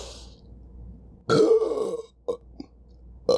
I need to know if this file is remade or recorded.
recorded